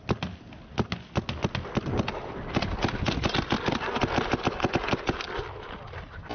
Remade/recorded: recorded